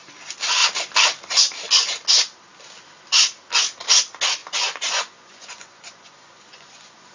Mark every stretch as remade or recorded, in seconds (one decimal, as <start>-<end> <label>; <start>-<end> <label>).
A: 0.0-4.4 recorded; 4.4-7.1 remade